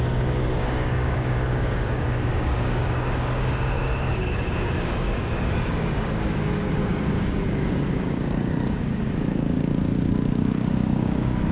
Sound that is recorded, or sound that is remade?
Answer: remade